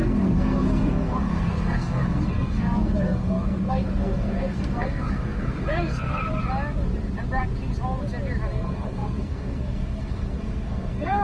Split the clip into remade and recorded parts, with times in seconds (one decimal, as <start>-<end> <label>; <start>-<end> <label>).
0.0-6.2 remade; 6.2-8.6 recorded; 8.6-11.2 remade